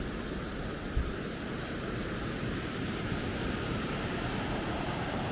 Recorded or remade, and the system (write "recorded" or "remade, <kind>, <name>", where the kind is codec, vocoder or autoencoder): remade, vocoder, BigVGAN v2